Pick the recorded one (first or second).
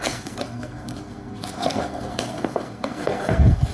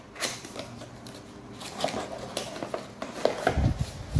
second